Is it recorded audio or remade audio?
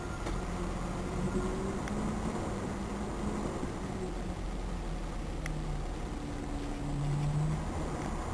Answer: recorded